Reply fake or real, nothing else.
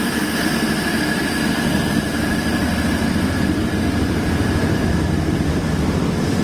fake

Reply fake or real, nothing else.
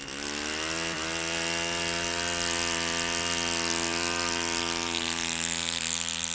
real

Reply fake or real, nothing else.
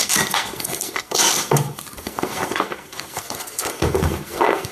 fake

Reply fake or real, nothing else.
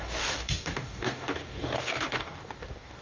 fake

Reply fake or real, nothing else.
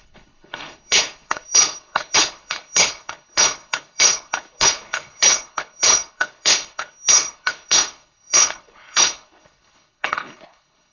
fake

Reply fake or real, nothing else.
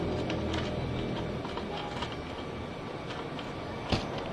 real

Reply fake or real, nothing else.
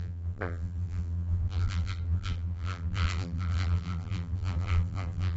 fake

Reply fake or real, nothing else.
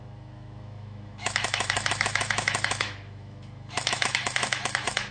fake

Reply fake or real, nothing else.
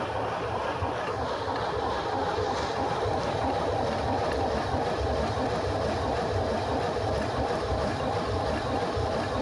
fake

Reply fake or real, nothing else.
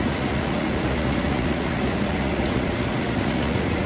fake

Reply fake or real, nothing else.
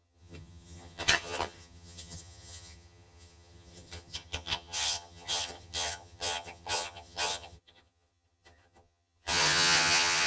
fake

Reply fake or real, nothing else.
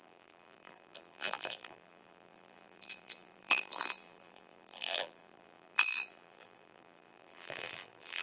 fake